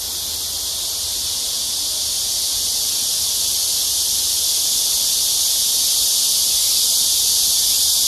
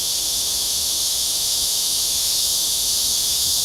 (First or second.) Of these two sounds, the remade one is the second